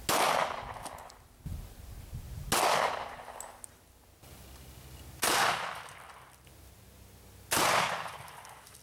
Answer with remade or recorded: recorded